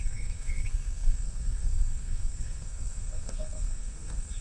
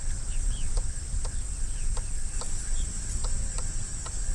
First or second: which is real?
second